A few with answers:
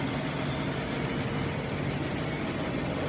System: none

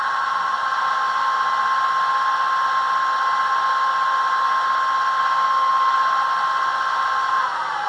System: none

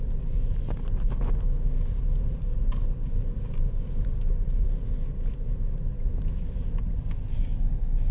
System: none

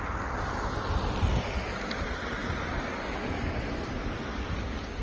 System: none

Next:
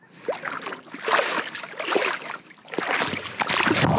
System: none